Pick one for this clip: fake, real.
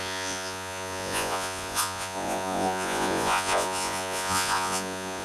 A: fake